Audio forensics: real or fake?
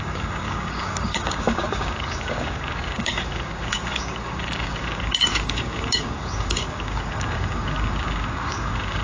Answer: fake